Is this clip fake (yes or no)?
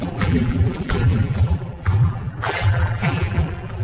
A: yes